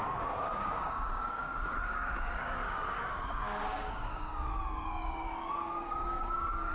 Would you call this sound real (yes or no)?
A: no